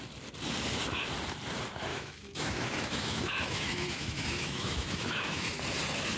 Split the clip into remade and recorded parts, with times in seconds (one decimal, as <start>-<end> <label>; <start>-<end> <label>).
0.0-1.9 recorded; 1.9-5.6 remade; 5.6-6.2 recorded